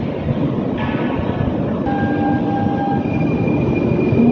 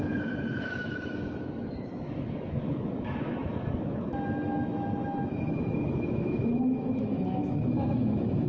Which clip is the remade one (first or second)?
second